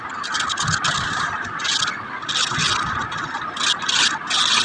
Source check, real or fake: real